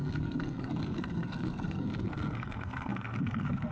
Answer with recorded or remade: remade